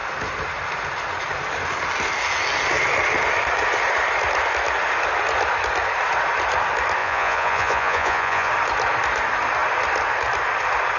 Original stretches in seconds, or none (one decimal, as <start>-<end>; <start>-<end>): 0.0-7.0; 8.5-11.0